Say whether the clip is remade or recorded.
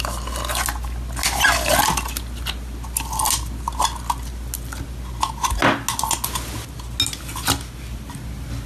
recorded